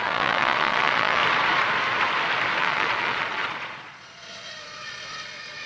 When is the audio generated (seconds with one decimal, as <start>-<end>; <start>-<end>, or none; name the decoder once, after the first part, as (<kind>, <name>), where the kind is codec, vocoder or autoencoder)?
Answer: 0.0-1.2 (vocoder, Vocos); 2.6-5.7